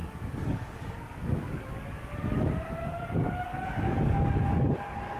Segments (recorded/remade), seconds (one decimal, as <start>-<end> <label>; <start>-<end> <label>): 0.0-5.2 remade